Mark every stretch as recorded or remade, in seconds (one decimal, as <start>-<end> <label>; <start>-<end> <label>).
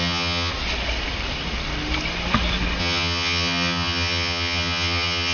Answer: 0.0-0.5 remade; 0.5-2.8 recorded; 2.8-5.3 remade